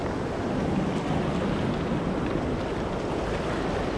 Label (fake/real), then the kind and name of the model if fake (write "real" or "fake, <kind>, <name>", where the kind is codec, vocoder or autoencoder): real